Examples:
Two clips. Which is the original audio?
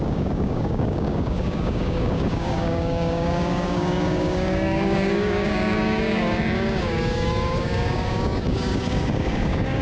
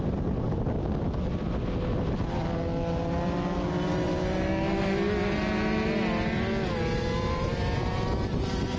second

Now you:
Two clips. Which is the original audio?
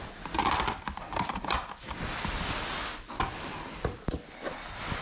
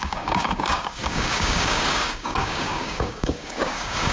first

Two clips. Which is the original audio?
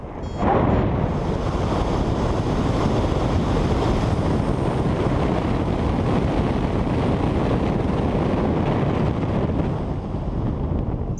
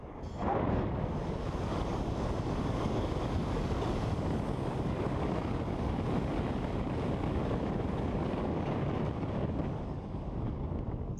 first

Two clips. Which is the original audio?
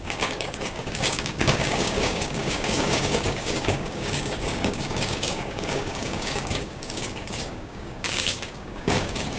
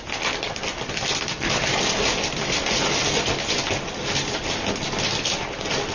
second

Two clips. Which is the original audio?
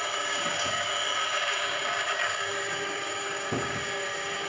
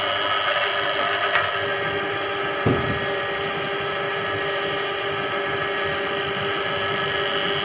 second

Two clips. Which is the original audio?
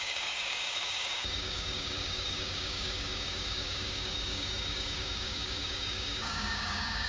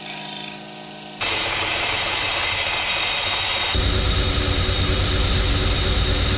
second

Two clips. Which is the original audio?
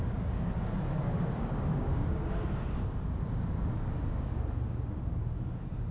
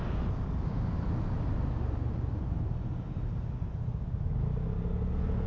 second